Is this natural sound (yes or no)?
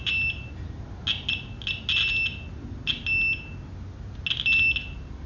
yes